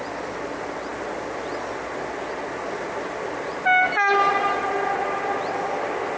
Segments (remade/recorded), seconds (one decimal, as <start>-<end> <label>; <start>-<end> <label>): 0.0-6.2 recorded